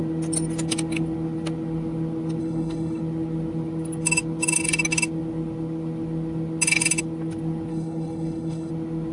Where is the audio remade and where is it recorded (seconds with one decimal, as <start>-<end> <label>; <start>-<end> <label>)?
0.0-2.4 recorded; 2.4-3.0 remade; 3.0-7.7 recorded; 7.7-8.7 remade; 8.7-9.1 recorded